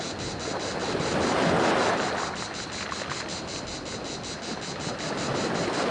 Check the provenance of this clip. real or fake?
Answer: real